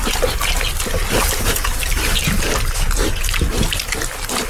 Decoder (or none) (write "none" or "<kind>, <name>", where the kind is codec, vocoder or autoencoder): none